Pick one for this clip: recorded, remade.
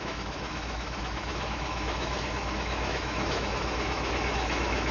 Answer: remade